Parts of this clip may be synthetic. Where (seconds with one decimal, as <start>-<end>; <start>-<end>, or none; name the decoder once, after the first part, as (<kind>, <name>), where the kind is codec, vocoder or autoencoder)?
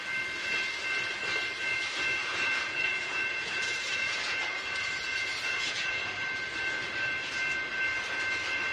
2.3-6.1 (vocoder, Vocos)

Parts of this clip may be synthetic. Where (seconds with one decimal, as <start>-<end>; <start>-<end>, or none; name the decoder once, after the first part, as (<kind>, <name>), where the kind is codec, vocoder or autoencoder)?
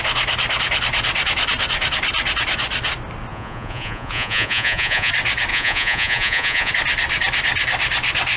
3.3-5.1 (vocoder, Vocos); 5.5-6.7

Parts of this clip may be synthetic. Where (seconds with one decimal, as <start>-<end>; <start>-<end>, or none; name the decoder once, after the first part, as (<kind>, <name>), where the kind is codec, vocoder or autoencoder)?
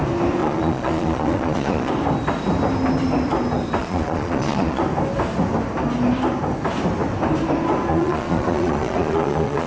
0.4-1.9 (vocoder, Vocos); 3.8-4.8; 7.9-9.7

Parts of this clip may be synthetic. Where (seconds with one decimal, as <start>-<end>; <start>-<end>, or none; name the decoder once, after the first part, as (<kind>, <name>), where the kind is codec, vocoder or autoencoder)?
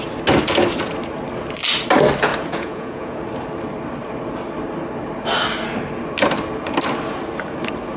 2.3-3.2 (vocoder, Vocos)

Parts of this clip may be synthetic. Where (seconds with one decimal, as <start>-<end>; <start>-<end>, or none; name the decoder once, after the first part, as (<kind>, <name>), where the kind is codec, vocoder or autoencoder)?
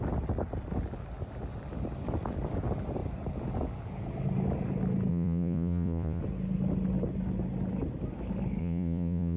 5.1-6.2 (vocoder, Vocos); 8.6-9.4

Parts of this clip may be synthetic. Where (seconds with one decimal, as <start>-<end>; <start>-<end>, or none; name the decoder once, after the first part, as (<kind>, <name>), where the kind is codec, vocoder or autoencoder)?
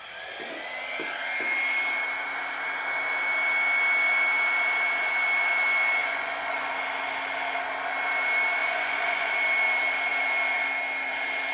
6.0-6.7 (vocoder, Vocos); 8.6-9.3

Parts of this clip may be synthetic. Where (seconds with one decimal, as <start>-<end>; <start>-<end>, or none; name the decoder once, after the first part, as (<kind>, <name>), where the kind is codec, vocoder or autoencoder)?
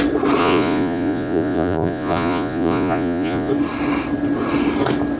0.4-3.5 (vocoder, Vocos)